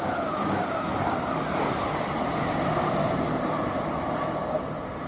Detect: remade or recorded recorded